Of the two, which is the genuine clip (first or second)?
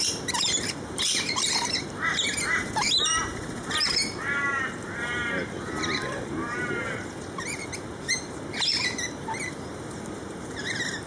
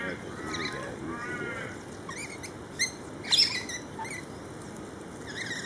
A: second